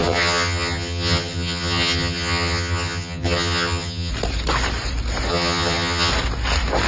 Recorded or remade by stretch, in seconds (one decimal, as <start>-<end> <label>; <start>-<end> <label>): 0.0-4.1 remade; 4.1-5.3 recorded; 5.3-6.1 remade; 6.1-6.9 recorded